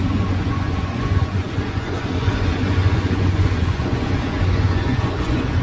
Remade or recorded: remade